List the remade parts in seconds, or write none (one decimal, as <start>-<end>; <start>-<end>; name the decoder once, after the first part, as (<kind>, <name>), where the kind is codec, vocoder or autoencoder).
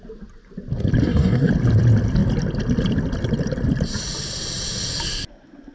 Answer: 1.0-1.5 (codec, SNAC)